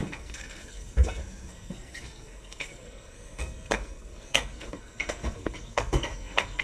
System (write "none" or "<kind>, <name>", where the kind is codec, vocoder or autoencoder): codec, SNAC